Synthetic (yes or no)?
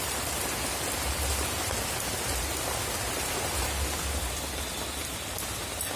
no